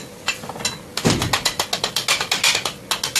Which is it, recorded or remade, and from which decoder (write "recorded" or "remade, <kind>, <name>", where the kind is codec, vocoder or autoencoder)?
recorded